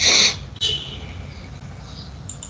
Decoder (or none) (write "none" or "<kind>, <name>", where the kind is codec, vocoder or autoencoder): none